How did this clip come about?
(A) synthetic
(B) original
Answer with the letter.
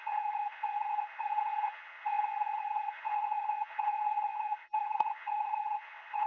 A